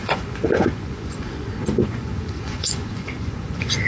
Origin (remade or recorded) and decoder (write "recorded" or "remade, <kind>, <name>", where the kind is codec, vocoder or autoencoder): remade, vocoder, Vocos